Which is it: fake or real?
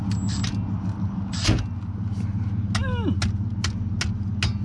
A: real